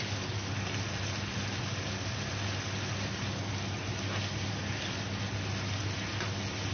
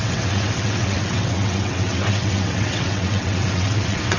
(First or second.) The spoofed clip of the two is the second